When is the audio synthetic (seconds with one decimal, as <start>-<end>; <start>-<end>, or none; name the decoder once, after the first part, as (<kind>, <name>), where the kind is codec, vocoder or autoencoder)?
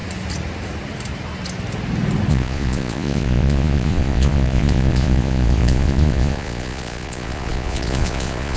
2.3-8.6 (vocoder, Vocos)